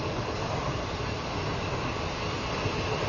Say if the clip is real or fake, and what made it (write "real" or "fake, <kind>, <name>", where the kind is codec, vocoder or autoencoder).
real